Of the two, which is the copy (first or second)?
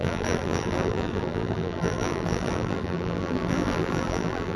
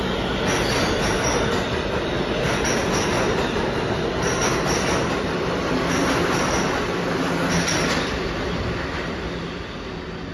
first